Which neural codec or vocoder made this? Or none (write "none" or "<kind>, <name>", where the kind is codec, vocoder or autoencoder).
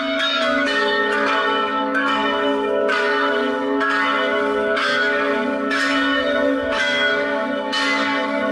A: codec, DAC